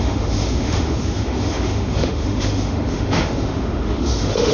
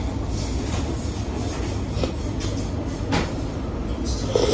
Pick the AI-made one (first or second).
first